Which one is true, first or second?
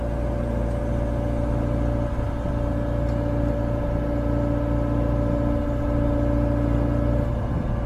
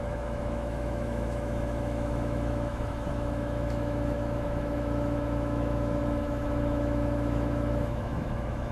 first